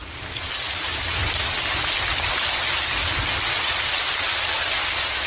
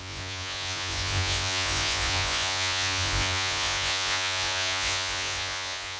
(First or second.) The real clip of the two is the first